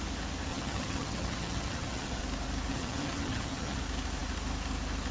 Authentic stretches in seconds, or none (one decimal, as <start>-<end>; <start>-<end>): 0.0-0.5; 2.2-2.7; 3.8-5.1